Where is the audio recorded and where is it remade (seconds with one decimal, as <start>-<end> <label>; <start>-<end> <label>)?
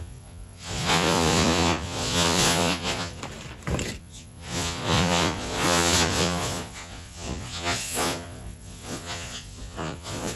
0.0-3.2 remade; 3.2-4.0 recorded; 4.0-10.4 remade